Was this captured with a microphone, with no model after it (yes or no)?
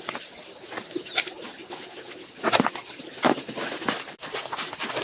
yes